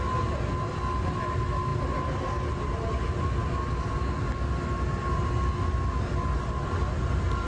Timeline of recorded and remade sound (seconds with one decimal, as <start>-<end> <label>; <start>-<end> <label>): 0.0-7.5 recorded